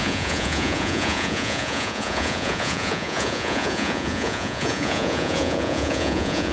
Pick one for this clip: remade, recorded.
remade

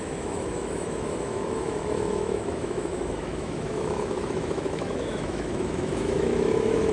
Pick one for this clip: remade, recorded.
remade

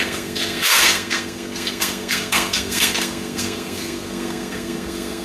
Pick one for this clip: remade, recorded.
remade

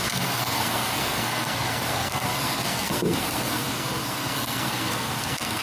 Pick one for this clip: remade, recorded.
remade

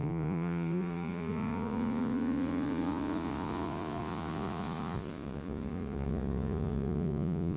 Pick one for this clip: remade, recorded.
remade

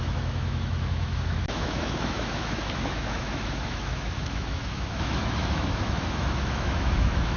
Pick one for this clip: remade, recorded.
remade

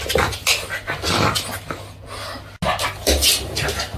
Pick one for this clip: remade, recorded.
recorded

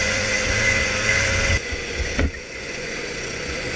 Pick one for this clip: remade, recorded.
remade